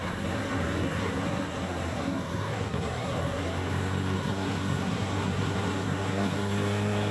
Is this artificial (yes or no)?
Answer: yes